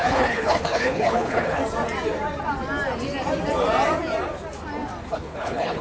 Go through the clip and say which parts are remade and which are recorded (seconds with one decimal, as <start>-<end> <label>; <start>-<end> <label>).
0.0-1.6 remade; 1.6-5.1 recorded; 5.1-5.8 remade